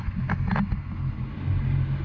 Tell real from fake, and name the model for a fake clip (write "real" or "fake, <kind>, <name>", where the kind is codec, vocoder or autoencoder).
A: real